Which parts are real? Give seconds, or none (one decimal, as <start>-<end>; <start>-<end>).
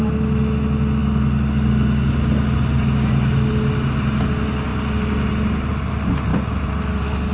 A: 0.0-7.3